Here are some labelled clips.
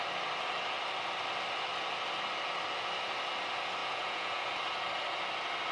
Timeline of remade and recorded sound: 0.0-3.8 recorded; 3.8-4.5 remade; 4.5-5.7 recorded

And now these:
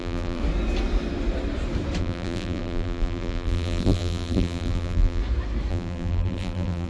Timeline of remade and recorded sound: 0.0-0.4 remade; 0.4-2.0 recorded; 2.0-5.2 remade; 5.2-5.7 recorded; 5.7-6.9 remade

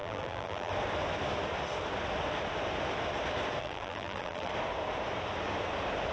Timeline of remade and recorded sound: 0.0-0.7 remade; 0.7-3.6 recorded; 3.6-4.5 remade; 4.5-6.1 recorded

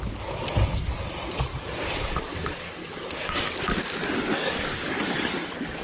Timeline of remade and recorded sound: 0.0-1.5 recorded; 1.5-5.0 remade; 5.0-5.8 recorded

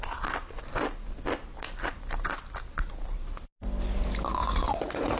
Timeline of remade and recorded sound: 0.0-4.4 recorded; 4.4-5.2 remade

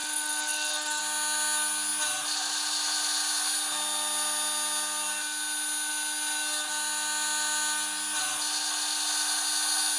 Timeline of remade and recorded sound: 0.0-1.0 remade; 1.0-10.0 recorded

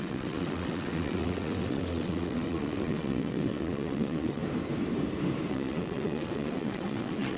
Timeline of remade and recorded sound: 0.0-4.4 remade; 4.4-5.5 recorded; 5.5-7.4 remade